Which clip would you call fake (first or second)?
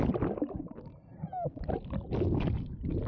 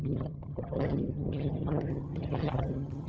second